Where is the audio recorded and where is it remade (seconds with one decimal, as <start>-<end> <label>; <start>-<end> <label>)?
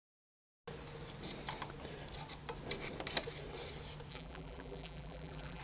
0.0-4.1 recorded; 4.1-5.6 remade